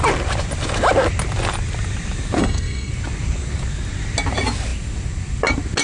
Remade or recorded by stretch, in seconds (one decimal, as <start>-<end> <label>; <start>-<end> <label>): 0.0-2.4 recorded; 2.4-2.9 remade; 2.9-5.8 recorded